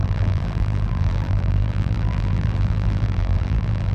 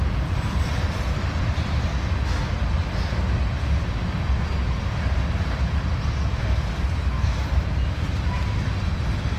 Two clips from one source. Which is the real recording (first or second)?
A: second